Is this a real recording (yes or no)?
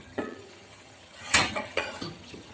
no